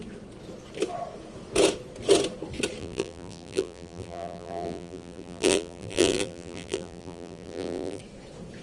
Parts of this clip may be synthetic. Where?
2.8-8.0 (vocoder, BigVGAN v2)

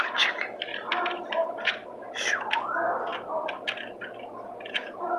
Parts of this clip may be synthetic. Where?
0.0-0.7 (vocoder, BigVGAN v2); 1.2-1.8; 2.4-3.1; 4.7-5.2

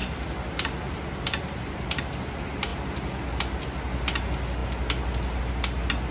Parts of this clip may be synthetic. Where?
0.0-2.0 (vocoder, BigVGAN v2)